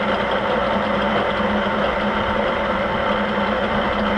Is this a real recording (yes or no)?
yes